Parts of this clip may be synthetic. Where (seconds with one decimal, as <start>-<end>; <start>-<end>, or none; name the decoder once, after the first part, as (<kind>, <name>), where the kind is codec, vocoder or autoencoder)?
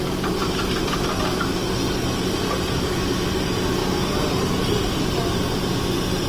none